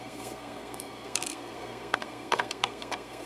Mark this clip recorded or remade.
remade